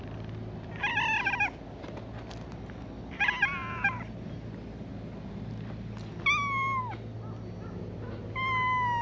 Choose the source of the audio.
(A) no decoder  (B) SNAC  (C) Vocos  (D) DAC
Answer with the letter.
A